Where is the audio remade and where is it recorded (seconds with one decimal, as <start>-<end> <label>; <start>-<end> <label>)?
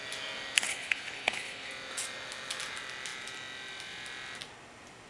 0.0-0.7 recorded; 0.7-1.7 remade; 1.7-5.1 recorded